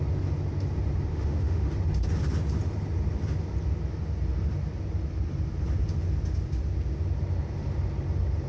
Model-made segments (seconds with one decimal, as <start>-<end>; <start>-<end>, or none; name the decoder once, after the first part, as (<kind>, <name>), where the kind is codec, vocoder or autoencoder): 1.1-1.7 (autoencoder, DAC-VAE)